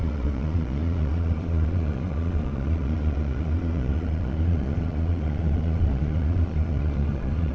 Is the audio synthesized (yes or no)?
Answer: yes